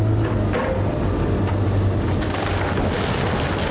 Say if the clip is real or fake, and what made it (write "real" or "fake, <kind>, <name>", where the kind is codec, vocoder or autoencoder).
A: real